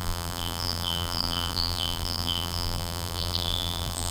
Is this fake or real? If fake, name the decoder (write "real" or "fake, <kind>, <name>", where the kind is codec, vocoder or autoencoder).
fake, vocoder, BigVGAN v2